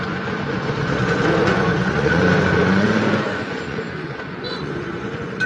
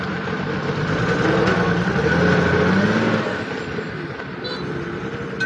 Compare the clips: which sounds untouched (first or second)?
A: second